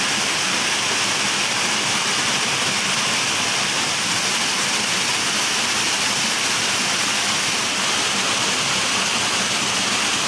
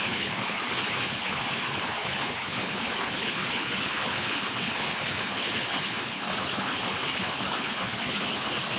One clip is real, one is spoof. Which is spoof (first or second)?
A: second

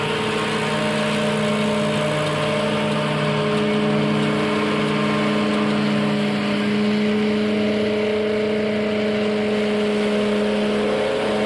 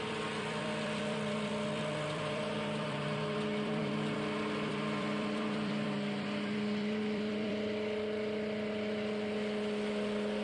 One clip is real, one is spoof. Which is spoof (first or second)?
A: second